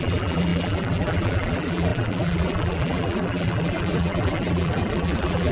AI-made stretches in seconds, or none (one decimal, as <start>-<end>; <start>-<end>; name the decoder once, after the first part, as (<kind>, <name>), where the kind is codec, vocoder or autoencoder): 0.0-5.5 (vocoder, BigVGAN v2)